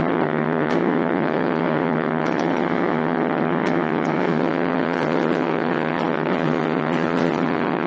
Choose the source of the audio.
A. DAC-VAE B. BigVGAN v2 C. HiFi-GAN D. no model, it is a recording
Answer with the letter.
C